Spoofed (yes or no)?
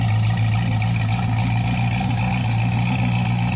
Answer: no